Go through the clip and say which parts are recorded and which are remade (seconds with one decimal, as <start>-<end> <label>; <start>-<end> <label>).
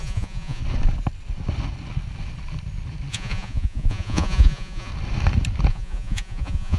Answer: 0.0-0.6 remade; 0.6-3.1 recorded; 3.1-4.9 remade; 4.9-5.7 recorded; 5.7-6.8 remade